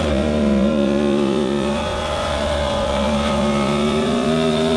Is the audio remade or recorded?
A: remade